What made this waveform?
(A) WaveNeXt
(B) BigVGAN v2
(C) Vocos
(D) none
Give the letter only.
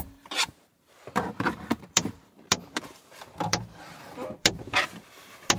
B